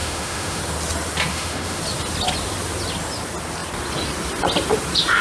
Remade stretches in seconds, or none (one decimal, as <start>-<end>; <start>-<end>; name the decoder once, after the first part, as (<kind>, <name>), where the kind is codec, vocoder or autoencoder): 0.0-0.6 (autoencoder, DAC-VAE); 1.3-1.8